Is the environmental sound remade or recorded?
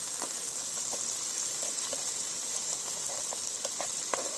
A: recorded